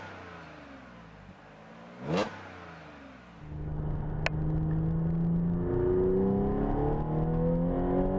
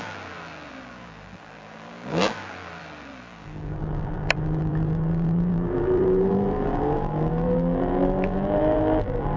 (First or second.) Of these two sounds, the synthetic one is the second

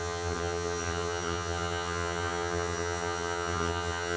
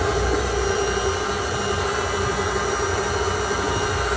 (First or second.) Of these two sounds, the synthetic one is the first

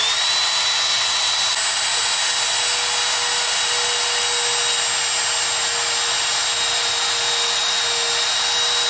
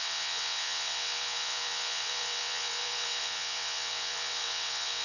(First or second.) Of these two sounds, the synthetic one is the second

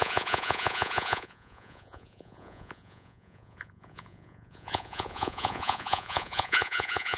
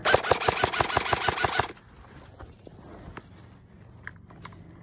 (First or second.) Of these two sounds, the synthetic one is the first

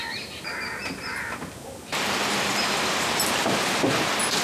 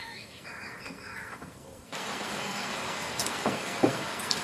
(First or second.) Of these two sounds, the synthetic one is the second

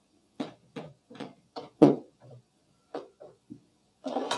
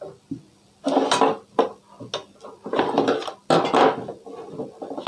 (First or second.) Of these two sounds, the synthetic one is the first